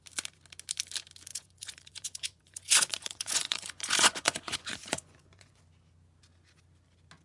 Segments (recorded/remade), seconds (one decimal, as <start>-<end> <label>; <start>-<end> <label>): 0.0-1.3 recorded; 1.3-5.6 remade; 5.6-7.2 recorded